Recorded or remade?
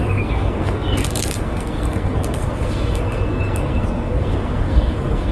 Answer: remade